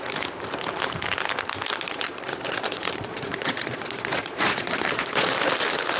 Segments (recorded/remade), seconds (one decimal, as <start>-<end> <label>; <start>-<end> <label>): 0.0-1.7 recorded; 1.7-5.3 remade; 5.3-6.0 recorded